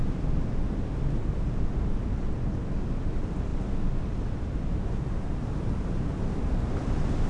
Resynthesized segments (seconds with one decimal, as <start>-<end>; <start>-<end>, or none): none